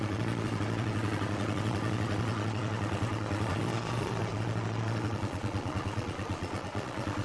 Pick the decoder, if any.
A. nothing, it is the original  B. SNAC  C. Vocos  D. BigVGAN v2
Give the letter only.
C